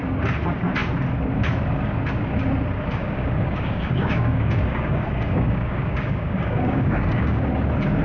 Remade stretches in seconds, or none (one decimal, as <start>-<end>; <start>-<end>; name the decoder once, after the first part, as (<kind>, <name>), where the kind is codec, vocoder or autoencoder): 3.0-7.4 (codec, DAC)